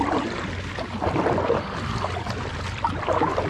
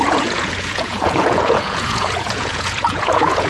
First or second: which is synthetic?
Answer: second